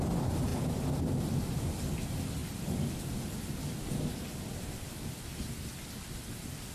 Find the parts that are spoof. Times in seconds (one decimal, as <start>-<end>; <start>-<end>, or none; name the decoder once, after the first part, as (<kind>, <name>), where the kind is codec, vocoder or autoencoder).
0.5-1.6 (vocoder, BigVGAN v2)